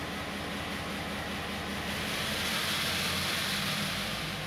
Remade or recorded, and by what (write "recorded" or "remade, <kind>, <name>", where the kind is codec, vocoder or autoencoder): recorded